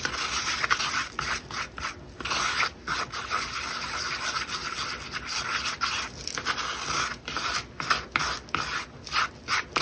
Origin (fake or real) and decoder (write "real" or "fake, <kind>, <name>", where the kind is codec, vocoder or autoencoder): real